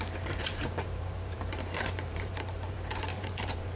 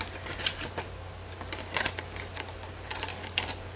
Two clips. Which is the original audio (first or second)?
second